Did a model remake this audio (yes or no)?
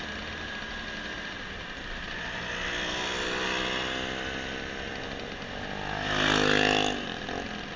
no